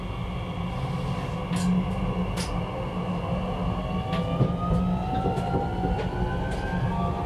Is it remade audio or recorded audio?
recorded